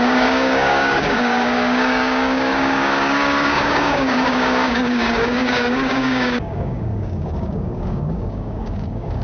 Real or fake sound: fake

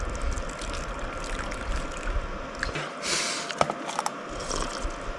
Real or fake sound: real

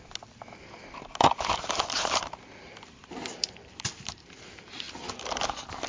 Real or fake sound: real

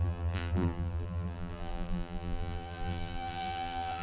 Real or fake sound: fake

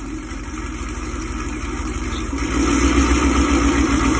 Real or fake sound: fake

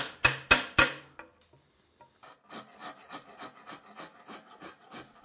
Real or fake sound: real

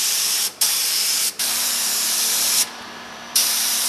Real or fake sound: fake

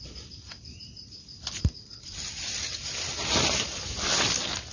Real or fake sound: real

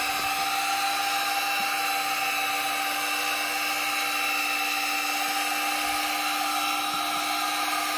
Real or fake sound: real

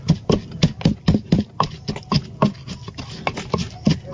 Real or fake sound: real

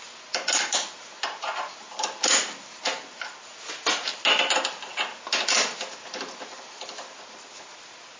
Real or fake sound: real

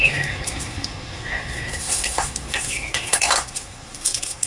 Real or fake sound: fake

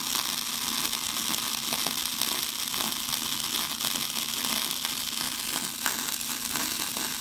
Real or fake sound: real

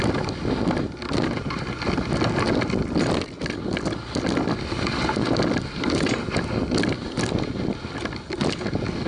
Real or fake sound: real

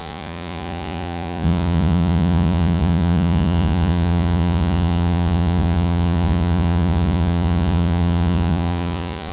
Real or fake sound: fake